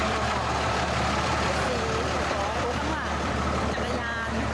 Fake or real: fake